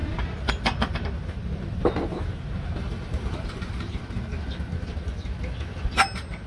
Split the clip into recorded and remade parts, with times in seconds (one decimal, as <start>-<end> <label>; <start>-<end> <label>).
0.0-0.5 remade; 0.5-1.2 recorded; 1.2-5.1 remade; 5.1-6.5 recorded